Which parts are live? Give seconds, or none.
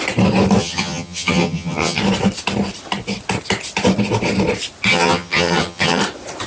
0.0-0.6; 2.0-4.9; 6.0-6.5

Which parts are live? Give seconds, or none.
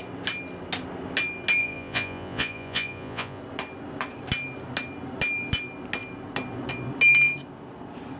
0.0-1.6; 3.4-8.2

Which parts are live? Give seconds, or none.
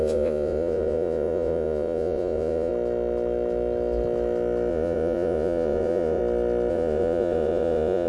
2.7-4.7; 6.2-6.7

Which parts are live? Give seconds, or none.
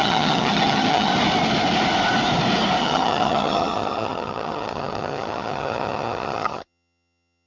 1.1-2.8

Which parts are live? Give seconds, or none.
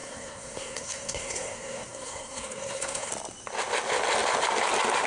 3.1-5.1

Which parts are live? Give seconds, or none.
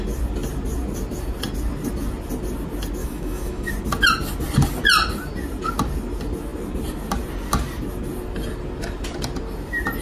0.0-3.0; 3.7-10.0